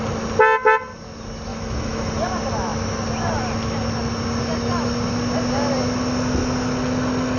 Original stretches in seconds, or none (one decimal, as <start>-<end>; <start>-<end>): 0.0-1.5; 2.1-7.4